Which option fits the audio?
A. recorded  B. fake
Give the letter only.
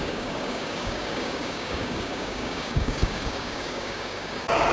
B